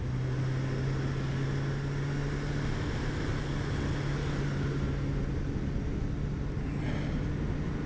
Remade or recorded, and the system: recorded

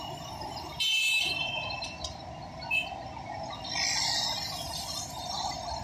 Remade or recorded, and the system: recorded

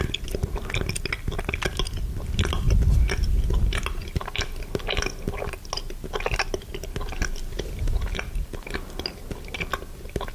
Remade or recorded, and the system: recorded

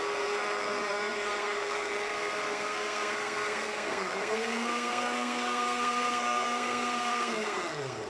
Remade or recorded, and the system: remade, codec, SNAC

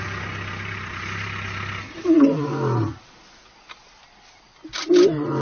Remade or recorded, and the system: recorded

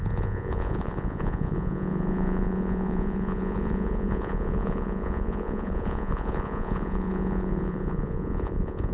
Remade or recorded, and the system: remade, vocoder, Vocos